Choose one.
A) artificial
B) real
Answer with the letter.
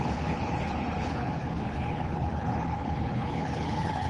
A